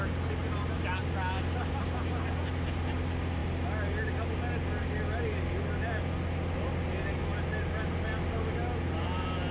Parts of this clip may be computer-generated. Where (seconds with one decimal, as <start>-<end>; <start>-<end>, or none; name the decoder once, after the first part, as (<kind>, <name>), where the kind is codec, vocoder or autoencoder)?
none